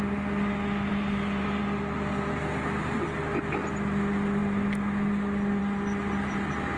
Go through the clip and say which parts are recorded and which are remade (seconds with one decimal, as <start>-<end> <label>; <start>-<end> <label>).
0.0-0.9 recorded; 0.9-1.6 remade; 1.6-6.8 recorded